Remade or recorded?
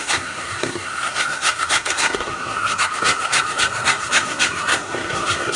remade